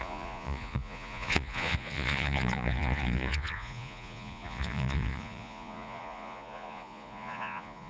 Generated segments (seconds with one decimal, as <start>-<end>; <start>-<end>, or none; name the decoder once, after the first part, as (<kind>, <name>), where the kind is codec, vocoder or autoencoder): 0.0-7.9 (vocoder, Vocos)